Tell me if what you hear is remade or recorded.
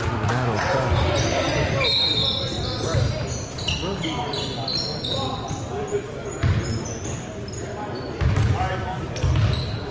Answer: recorded